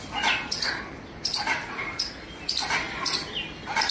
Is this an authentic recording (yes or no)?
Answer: yes